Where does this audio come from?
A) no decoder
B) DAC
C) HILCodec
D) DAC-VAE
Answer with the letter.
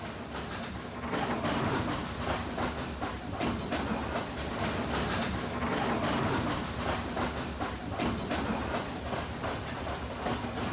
A